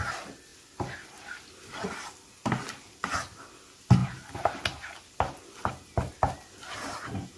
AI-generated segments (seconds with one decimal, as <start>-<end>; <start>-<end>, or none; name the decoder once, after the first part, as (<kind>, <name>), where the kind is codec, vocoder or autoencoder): none